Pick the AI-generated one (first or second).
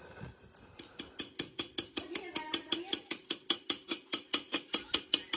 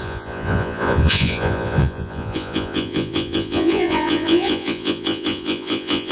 second